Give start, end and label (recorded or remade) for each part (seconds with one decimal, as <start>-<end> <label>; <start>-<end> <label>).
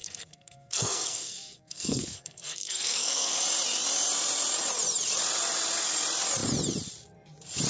0.0-3.4 remade; 3.4-7.7 recorded